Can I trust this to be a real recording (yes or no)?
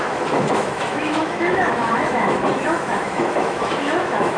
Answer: no